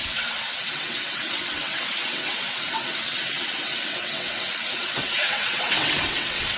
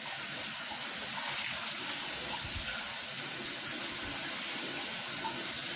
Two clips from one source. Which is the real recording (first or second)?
second